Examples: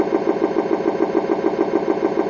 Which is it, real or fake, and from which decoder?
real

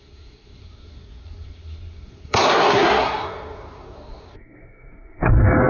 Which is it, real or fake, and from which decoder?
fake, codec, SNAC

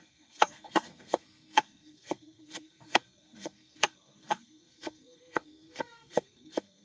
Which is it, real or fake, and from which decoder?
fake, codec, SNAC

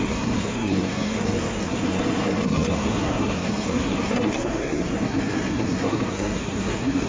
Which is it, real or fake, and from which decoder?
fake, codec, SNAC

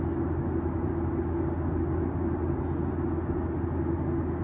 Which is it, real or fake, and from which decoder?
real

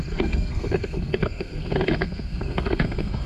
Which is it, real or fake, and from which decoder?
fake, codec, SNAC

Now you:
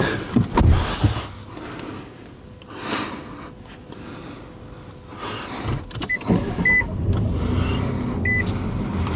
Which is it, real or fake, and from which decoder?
real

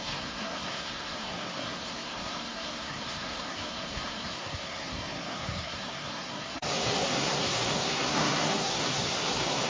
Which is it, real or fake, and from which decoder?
fake, codec, SNAC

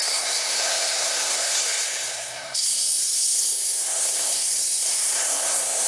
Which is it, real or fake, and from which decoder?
fake, codec, SNAC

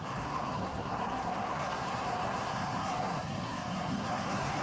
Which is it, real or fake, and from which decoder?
fake, codec, SNAC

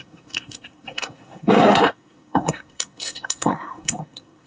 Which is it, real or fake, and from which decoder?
fake, codec, SNAC